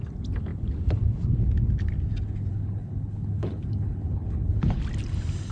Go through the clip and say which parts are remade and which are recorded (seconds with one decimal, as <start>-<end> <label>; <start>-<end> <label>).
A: 0.0-2.5 recorded; 2.5-4.8 remade; 4.8-5.5 recorded